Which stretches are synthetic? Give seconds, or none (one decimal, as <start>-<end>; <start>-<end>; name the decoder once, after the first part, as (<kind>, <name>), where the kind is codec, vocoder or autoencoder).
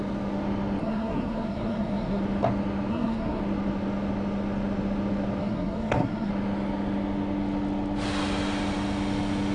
0.8-2.2 (codec, SNAC); 2.9-3.4; 5.4-6.3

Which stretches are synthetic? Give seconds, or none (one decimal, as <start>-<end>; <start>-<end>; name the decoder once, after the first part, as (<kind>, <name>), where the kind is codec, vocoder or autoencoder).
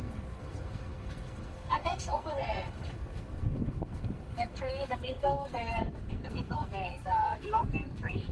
0.0-8.3 (codec, SNAC)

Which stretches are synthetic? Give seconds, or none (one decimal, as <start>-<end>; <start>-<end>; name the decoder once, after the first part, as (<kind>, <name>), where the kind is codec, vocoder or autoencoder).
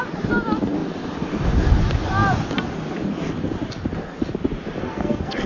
4.8-5.5 (codec, SNAC)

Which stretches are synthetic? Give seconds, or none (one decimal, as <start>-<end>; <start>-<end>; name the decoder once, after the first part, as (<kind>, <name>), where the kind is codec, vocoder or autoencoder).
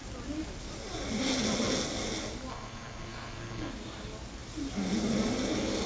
2.5-3.7 (codec, SNAC)